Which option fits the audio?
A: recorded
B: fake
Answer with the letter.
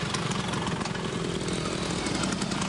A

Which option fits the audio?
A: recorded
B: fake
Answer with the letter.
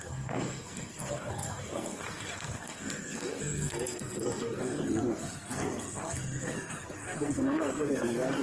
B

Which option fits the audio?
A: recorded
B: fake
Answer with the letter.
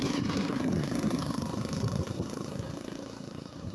B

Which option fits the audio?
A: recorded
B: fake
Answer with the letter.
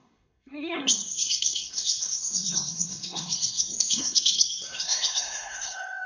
B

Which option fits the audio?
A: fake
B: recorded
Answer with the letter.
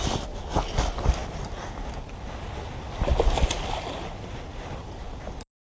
B